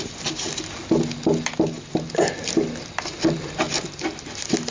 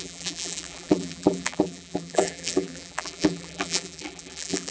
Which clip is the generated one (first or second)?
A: second